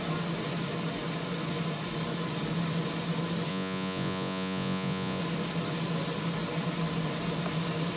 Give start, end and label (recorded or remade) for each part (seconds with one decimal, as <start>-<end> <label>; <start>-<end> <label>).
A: 0.0-3.5 recorded; 3.5-5.2 remade; 5.2-8.0 recorded